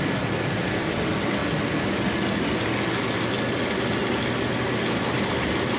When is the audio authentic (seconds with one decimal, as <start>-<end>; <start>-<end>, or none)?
0.0-5.8